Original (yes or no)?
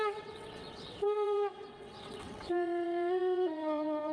no